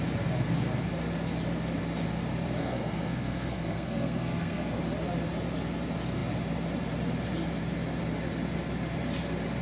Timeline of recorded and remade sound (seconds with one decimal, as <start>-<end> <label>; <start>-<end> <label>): 0.0-2.6 recorded; 2.6-4.8 remade; 4.8-9.6 recorded